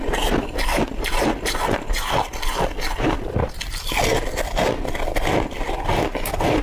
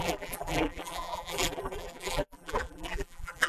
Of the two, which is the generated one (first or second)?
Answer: second